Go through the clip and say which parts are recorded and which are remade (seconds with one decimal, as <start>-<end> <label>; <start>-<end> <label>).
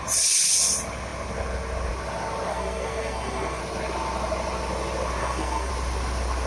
0.0-2.5 recorded; 2.5-3.6 remade; 3.6-5.2 recorded; 5.2-5.7 remade; 5.7-6.5 recorded